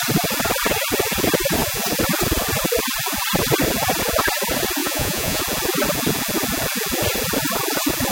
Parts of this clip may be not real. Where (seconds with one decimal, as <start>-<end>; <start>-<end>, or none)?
4.8-5.4